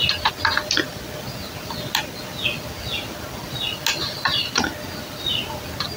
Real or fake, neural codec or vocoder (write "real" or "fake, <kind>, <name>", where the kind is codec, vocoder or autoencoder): real